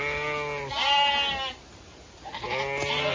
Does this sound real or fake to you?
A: real